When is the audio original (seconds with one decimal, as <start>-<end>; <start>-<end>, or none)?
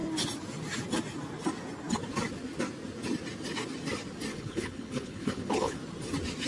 0.0-4.3; 5.8-6.5